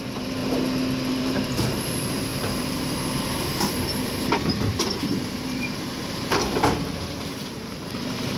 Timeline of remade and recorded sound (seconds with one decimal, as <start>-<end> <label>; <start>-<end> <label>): 0.0-0.4 remade; 0.4-1.1 recorded; 1.1-8.4 remade